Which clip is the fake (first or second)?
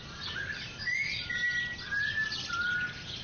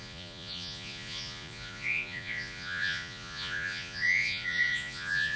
second